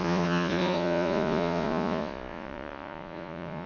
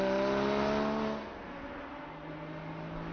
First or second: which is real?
second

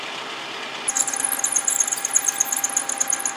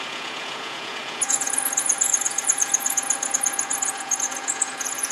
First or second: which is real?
first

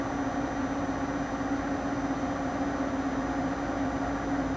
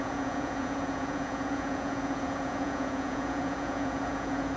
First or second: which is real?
first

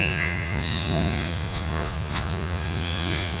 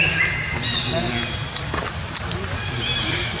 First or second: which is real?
second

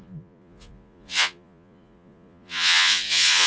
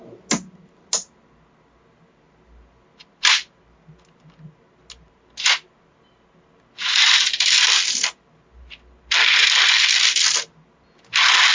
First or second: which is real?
second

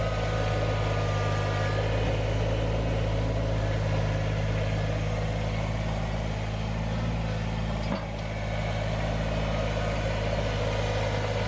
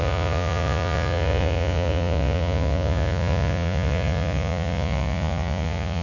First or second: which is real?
first